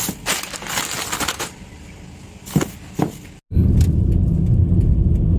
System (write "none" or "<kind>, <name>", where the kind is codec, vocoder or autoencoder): none